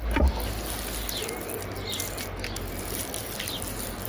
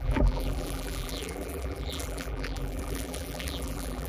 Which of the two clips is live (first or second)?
first